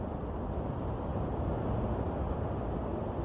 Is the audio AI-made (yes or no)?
no